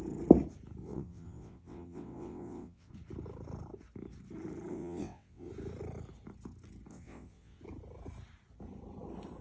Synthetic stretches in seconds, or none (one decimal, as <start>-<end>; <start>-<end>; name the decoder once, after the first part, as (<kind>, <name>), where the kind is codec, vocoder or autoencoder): 0.8-2.9 (vocoder, WaveNeXt); 4.7-5.5; 6.9-7.6